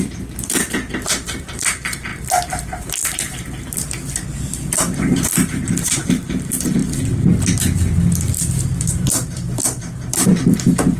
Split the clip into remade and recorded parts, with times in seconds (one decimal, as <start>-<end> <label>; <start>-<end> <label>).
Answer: 0.0-6.8 remade; 6.8-8.4 recorded; 8.4-11.0 remade